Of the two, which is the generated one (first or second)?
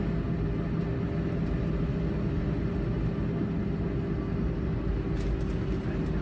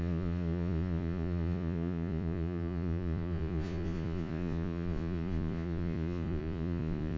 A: second